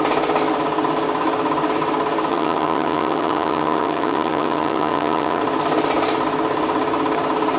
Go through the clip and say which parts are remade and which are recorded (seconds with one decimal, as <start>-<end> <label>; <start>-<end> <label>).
0.0-2.3 recorded; 2.3-5.4 remade; 5.4-7.6 recorded